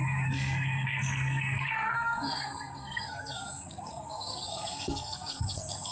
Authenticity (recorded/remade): remade